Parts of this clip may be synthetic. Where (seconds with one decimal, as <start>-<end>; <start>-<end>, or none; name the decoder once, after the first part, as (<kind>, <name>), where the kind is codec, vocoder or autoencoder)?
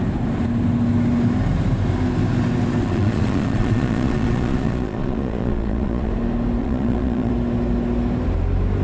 2.8-6.1 (vocoder, Vocos); 6.6-7.3